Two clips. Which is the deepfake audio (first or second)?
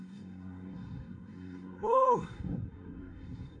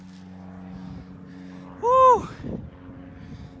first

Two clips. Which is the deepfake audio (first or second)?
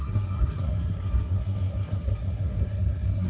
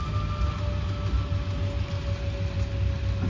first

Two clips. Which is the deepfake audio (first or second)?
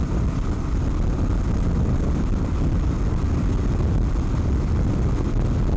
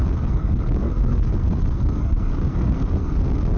second